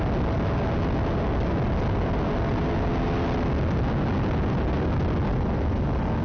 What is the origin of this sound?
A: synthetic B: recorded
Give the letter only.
B